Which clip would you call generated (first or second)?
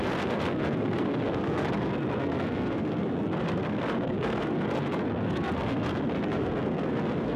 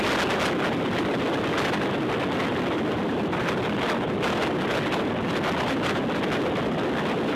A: first